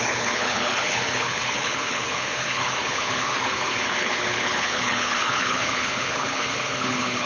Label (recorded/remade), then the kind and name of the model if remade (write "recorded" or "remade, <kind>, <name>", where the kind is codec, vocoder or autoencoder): remade, codec, HILCodec